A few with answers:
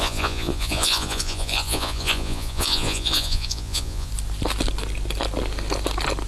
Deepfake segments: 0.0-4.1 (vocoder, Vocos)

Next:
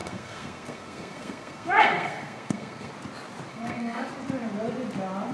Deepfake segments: 0.0-2.9 (codec, SNAC); 3.5-4.1

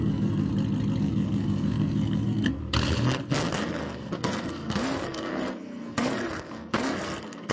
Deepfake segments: 0.0-0.5 (codec, SNAC); 1.0-2.6; 3.8-7.5

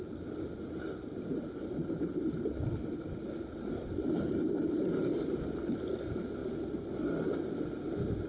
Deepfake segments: none

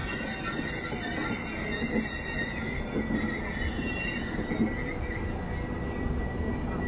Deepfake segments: none

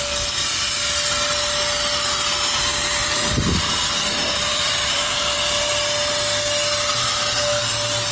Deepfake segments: 3.0-3.8 (vocoder, BigVGAN v2); 4.5-5.6

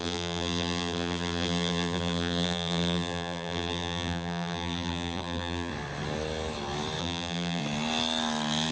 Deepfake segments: 0.0-5.7 (vocoder, BigVGAN v2); 7.0-7.6